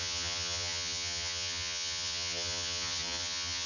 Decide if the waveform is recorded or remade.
remade